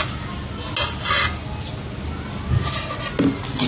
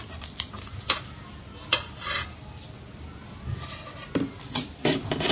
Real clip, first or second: first